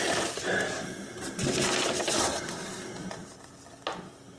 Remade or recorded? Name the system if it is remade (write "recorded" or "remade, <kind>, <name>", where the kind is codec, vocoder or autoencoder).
recorded